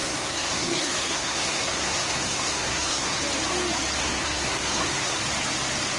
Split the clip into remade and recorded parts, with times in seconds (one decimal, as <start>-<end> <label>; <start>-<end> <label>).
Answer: 0.0-3.2 remade; 3.2-4.0 recorded; 4.0-5.2 remade; 5.2-6.0 recorded